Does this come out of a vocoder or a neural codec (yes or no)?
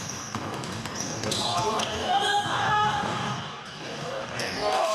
yes